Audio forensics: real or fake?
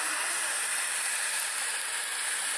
real